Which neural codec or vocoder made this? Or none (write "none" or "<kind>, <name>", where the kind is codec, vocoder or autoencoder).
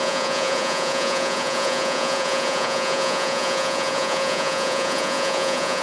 vocoder, Vocos